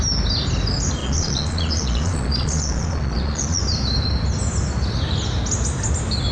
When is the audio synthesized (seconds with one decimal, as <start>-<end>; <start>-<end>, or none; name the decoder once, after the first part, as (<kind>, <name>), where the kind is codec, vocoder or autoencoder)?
1.0-3.6 (vocoder, Vocos)